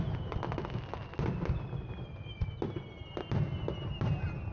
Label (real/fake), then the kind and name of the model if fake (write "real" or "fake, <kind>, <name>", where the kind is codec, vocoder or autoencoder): real